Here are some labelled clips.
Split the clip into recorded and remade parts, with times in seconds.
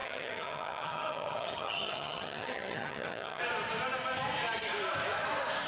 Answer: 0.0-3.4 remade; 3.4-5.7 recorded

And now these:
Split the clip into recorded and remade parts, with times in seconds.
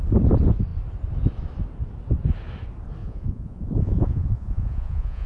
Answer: 0.0-3.0 recorded; 3.0-5.3 remade